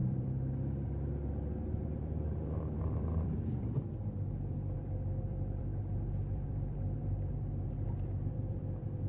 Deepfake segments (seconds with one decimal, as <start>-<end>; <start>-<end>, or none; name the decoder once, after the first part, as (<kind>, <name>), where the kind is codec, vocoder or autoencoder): 0.0-9.1 (vocoder, BigVGAN v2)